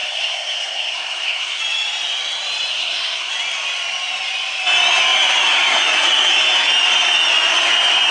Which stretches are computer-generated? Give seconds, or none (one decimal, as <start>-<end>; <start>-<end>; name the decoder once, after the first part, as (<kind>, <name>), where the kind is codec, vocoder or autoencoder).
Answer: 0.0-1.6 (codec, SNAC); 2.7-3.3